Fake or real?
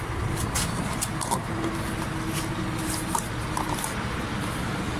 real